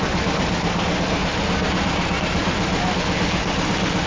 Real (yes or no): yes